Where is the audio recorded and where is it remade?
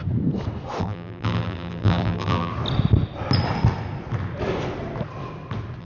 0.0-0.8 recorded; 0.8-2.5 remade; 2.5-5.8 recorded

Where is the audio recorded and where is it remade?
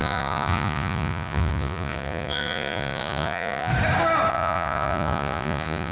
0.0-3.7 remade; 3.7-4.3 recorded; 4.3-5.9 remade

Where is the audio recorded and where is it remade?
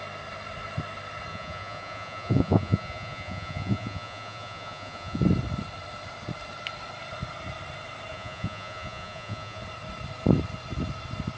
0.0-1.3 recorded; 1.3-5.2 remade; 5.2-8.1 recorded; 8.1-9.6 remade; 9.6-11.4 recorded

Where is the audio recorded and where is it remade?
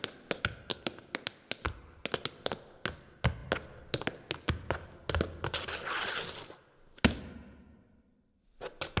0.0-9.0 recorded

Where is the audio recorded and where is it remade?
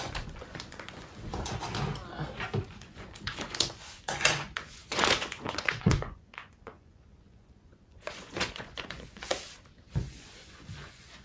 0.0-1.6 remade; 1.6-2.6 recorded; 2.6-9.3 remade; 9.3-9.9 recorded; 9.9-11.2 remade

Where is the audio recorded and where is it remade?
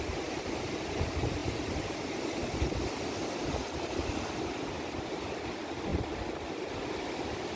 0.0-7.6 recorded